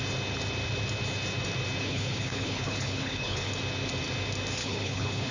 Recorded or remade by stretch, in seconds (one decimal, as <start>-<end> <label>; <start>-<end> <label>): 0.0-1.8 recorded; 1.8-3.5 remade; 3.5-4.6 recorded; 4.6-5.3 remade